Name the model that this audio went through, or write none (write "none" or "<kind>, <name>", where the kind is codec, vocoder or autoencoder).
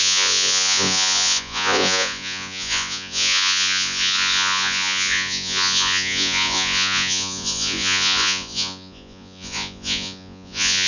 vocoder, Vocos